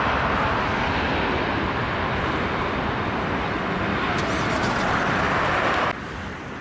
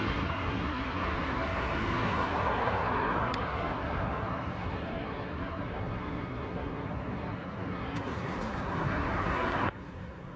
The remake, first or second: second